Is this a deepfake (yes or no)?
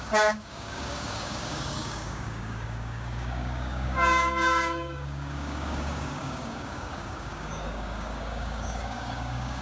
yes